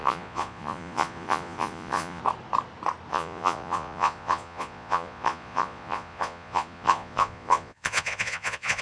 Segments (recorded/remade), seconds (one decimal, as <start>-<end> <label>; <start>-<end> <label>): 0.0-2.2 remade; 2.2-3.1 recorded; 3.1-8.8 remade